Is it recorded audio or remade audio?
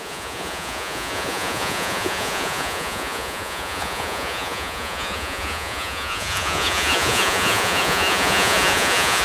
remade